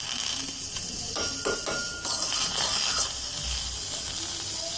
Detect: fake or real real